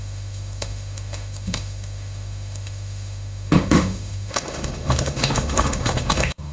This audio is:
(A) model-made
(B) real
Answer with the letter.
A